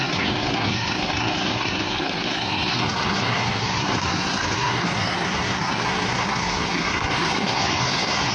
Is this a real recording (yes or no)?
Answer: no